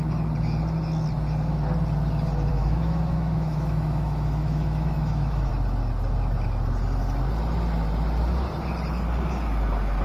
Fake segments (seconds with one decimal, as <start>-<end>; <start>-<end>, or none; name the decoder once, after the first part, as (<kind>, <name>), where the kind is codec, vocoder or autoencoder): 2.5-5.5 (autoencoder, DAC-VAE)

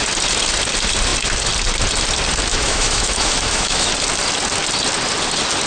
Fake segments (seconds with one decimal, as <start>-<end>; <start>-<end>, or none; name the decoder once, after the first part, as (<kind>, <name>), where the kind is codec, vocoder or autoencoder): 2.5-3.9 (autoencoder, DAC-VAE)

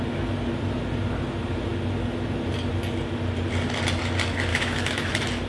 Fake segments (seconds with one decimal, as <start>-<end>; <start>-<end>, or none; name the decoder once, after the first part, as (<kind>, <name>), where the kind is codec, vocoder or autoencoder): 4.5-5.1 (autoencoder, DAC-VAE)